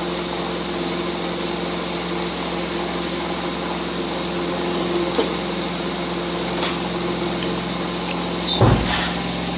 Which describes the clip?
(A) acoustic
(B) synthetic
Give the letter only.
A